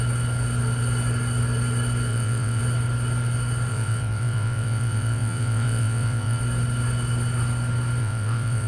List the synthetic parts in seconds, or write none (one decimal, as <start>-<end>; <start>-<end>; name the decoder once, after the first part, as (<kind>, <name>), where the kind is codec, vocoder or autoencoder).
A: 2.1-2.6 (vocoder, WaveNeXt); 3.7-6.4; 8.0-8.7